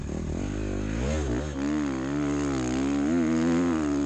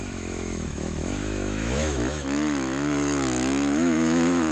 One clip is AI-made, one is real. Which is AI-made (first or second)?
second